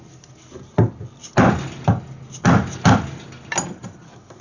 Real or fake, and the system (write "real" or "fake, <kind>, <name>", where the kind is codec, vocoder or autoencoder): real